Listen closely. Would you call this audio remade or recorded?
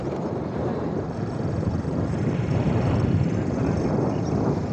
remade